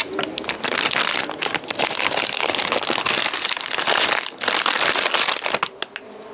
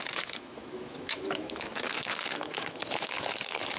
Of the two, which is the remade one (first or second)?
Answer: second